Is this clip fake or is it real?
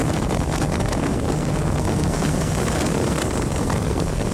fake